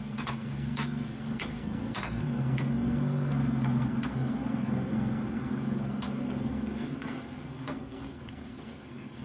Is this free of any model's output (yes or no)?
no